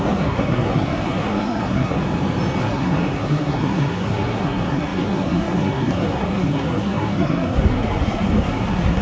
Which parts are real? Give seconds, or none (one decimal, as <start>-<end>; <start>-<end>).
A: 2.0-2.6